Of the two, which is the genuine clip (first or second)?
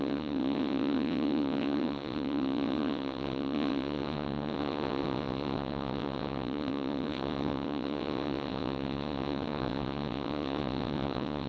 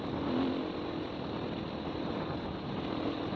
second